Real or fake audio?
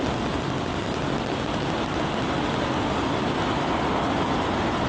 real